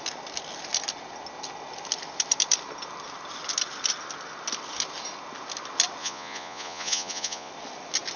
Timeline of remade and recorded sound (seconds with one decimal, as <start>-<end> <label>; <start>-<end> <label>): 0.0-6.0 recorded; 6.0-7.5 remade; 7.5-8.2 recorded